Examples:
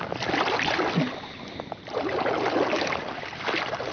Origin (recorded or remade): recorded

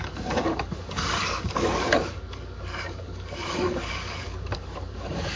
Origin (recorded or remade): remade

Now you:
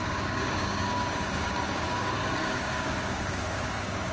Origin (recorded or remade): remade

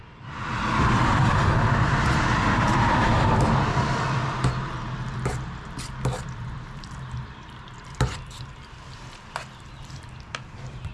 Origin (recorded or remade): remade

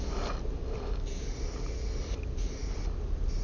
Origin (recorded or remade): recorded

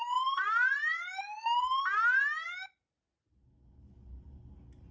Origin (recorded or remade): recorded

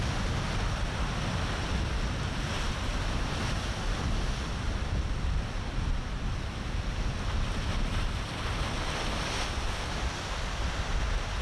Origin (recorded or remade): recorded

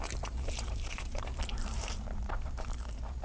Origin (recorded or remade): remade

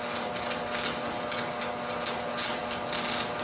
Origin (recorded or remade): recorded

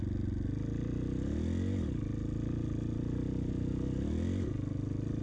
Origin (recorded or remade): recorded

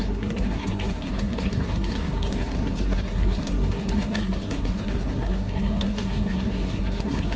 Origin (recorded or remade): remade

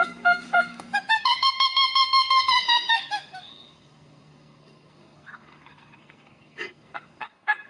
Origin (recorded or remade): remade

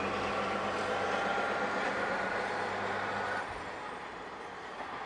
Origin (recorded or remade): recorded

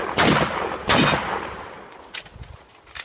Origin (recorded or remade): recorded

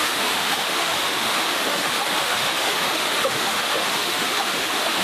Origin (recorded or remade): remade